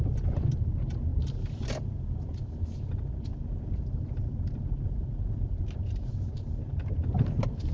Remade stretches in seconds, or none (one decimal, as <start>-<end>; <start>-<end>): none